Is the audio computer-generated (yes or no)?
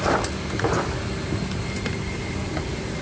no